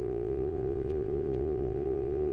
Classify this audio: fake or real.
fake